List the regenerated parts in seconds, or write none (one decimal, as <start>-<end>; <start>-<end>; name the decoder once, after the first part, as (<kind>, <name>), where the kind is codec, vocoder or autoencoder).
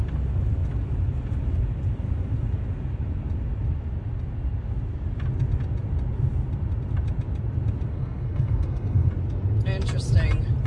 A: 7.9-9.1 (codec, SNAC)